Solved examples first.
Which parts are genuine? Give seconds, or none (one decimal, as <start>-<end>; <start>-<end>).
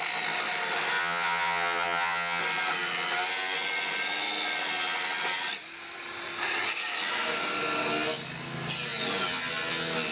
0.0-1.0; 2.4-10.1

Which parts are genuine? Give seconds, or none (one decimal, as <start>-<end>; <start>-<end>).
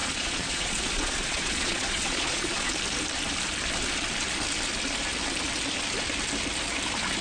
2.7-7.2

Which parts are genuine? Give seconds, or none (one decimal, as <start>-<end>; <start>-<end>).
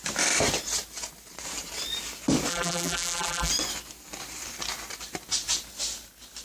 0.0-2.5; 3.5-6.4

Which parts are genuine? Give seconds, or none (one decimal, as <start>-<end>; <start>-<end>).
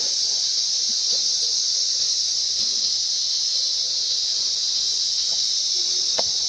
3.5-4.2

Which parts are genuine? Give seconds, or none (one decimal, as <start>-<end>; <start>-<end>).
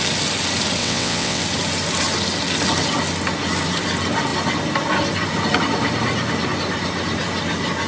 0.0-0.8; 1.4-7.9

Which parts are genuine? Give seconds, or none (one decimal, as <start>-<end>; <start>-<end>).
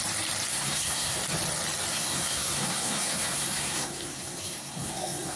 0.0-0.5; 1.2-1.9